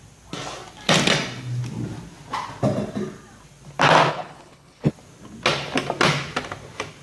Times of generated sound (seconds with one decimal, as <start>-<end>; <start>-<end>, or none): 4.1-4.9